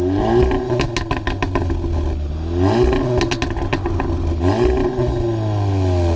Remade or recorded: recorded